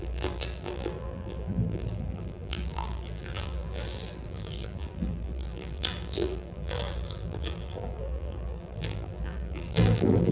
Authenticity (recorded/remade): remade